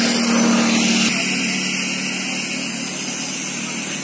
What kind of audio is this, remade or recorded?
recorded